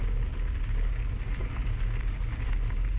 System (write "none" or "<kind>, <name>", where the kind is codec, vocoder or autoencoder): none